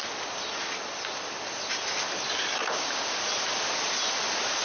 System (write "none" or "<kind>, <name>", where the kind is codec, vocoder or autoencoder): none